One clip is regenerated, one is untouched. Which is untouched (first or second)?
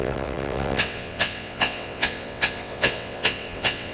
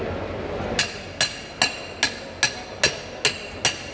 second